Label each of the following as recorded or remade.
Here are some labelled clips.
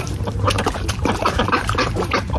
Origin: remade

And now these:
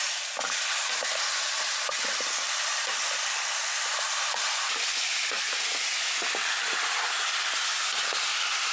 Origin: remade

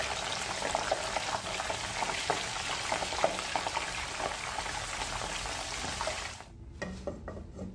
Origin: recorded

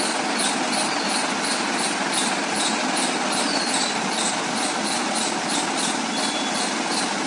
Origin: recorded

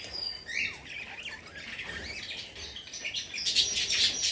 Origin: recorded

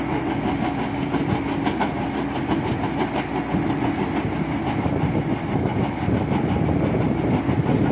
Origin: recorded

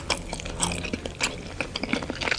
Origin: recorded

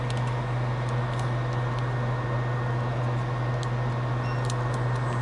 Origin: recorded